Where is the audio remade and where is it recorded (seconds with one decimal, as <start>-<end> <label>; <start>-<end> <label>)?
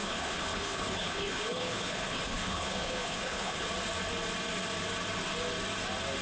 0.0-3.7 remade; 3.7-6.2 recorded